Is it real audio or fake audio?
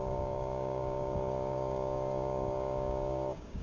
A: fake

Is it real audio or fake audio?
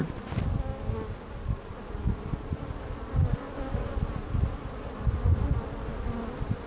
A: real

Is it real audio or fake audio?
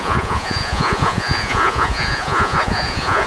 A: fake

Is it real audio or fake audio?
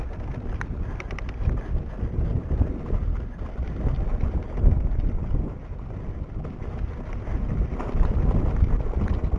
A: real